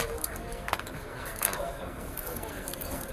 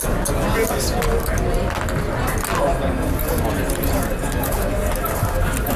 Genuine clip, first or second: second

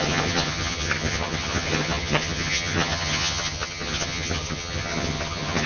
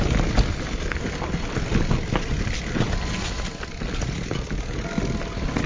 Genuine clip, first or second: second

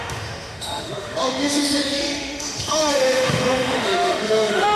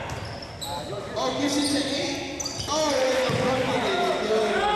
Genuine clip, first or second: second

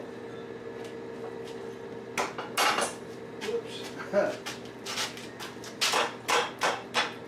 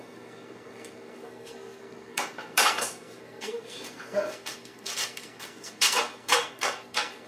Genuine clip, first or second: first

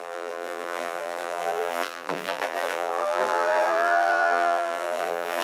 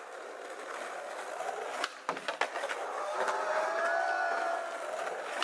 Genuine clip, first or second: second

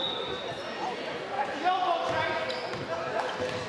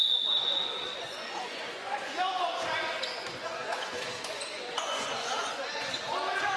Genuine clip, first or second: first